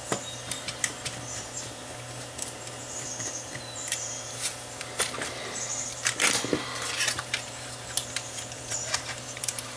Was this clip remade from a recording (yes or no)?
yes